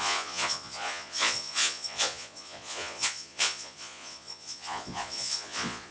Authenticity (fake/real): fake